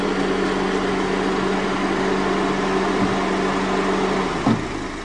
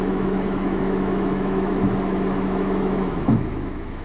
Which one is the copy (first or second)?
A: second